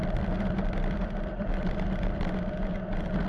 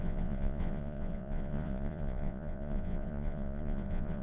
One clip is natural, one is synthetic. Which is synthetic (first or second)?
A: second